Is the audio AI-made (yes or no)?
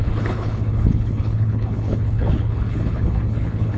yes